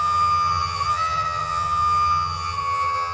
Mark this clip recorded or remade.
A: remade